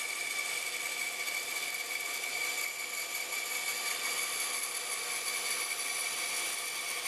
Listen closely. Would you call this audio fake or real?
real